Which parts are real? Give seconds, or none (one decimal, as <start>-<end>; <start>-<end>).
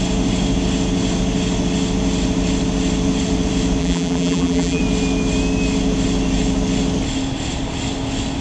0.0-3.8; 4.8-8.4